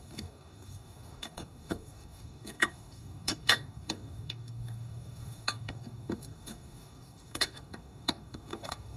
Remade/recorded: remade